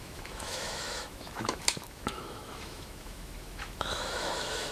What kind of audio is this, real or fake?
fake